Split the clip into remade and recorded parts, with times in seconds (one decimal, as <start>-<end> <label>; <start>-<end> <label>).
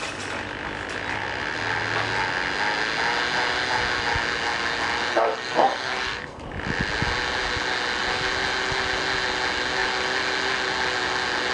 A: 0.0-5.1 recorded; 5.1-6.4 remade; 6.4-11.5 recorded